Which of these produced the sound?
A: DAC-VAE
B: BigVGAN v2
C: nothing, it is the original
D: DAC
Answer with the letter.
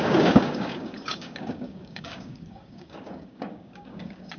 D